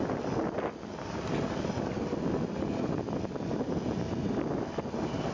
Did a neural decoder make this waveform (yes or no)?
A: no